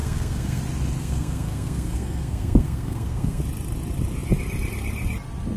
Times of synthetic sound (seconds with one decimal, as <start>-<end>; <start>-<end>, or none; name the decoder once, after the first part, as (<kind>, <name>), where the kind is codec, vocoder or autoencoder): 0.0-0.6 (codec, SNAC); 1.0-3.4